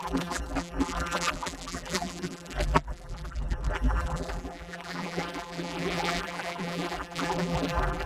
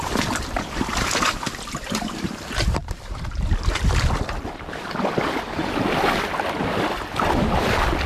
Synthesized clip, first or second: first